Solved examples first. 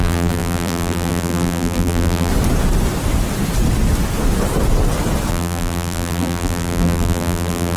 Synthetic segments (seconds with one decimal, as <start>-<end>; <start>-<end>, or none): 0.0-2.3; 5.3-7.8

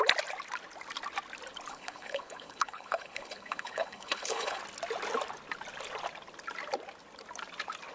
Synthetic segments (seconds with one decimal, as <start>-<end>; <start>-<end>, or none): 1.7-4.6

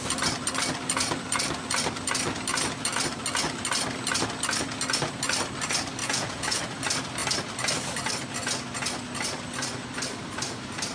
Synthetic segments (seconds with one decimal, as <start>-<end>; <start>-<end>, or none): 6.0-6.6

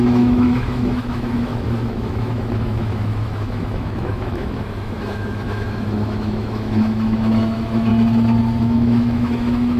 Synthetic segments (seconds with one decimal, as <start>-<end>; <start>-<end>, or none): 0.0-7.9; 8.6-9.8